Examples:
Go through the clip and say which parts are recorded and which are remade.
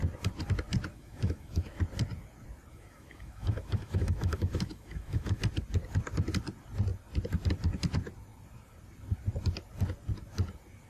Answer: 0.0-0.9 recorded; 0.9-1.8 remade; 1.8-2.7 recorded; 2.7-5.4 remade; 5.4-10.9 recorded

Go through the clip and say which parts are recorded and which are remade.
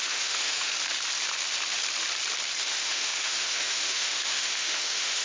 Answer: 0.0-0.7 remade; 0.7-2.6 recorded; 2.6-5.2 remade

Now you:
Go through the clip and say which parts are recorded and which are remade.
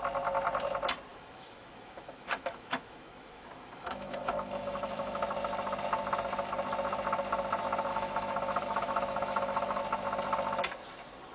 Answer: 0.0-1.1 recorded; 1.1-5.2 remade; 5.2-7.9 recorded; 7.9-9.8 remade; 9.8-11.3 recorded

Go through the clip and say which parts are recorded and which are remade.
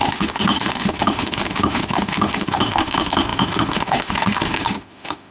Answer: 0.0-5.3 remade